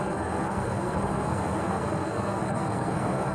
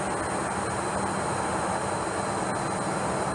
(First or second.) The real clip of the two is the second